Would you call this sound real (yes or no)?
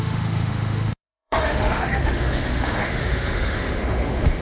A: no